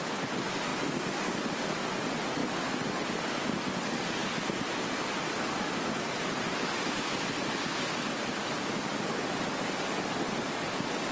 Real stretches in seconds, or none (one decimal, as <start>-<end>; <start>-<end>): 0.0-11.1